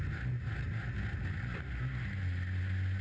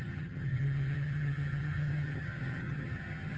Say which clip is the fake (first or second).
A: second